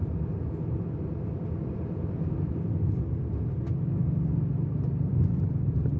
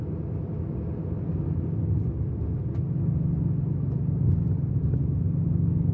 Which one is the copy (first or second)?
first